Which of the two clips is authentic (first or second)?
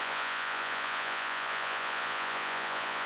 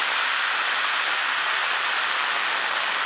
second